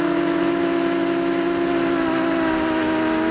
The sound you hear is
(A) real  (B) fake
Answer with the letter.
A